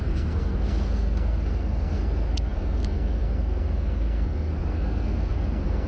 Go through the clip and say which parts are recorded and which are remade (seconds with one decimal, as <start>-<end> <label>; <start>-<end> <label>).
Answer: 0.0-5.9 remade